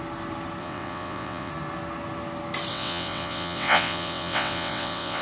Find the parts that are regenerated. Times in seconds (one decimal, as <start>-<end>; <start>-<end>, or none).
0.6-1.5; 2.7-5.2